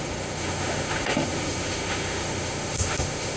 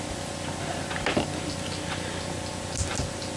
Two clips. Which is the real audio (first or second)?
second